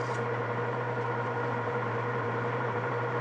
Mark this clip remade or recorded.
remade